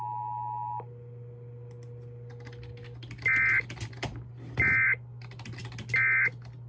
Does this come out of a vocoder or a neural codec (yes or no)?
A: no